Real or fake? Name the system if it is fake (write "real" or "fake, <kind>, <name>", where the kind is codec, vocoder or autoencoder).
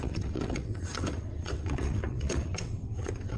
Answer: fake, vocoder, WaveNeXt